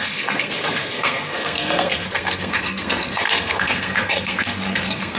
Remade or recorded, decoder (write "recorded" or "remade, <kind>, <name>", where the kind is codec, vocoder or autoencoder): remade, codec, SNAC